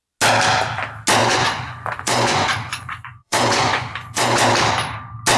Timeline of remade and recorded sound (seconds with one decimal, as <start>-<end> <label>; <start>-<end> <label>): 0.0-1.2 recorded; 1.2-4.4 remade; 4.4-5.4 recorded